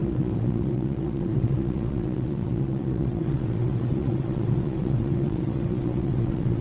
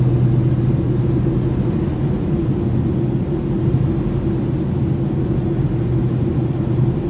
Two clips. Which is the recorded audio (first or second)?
second